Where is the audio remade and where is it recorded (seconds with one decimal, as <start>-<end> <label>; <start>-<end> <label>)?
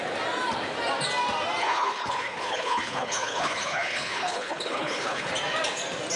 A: 0.0-1.6 recorded; 1.6-5.3 remade; 5.3-6.2 recorded